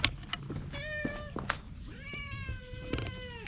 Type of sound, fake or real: real